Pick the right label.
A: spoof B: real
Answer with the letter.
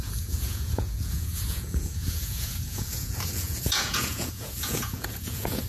A